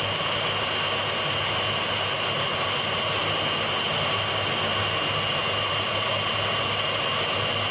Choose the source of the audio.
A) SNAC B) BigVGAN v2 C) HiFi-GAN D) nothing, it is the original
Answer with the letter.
D